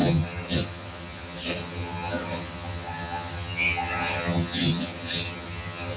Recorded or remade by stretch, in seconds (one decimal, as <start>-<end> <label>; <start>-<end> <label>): 0.0-6.0 remade